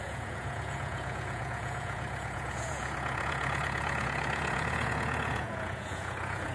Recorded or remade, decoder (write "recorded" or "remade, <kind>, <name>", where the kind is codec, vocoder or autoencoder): remade, vocoder, Vocos